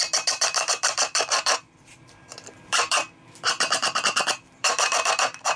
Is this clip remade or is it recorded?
remade